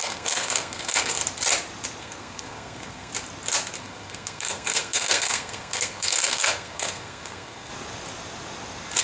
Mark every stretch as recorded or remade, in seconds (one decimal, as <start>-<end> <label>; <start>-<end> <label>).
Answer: 0.0-1.2 remade; 1.2-2.0 recorded; 2.0-3.1 remade; 3.1-3.8 recorded; 3.8-7.7 remade; 7.7-9.0 recorded